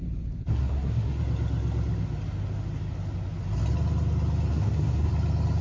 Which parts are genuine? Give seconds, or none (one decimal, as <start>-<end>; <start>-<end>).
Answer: 0.0-0.5; 1.2-4.5; 5.1-5.6